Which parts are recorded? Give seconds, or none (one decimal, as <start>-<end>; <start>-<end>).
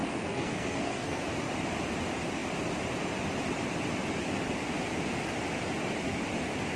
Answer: 1.2-6.8